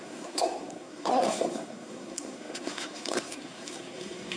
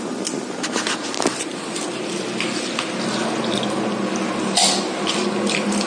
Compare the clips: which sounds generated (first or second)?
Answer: first